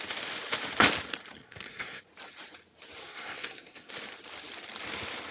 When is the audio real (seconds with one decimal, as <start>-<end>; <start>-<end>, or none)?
0.0-1.4; 2.0-3.0; 3.9-5.3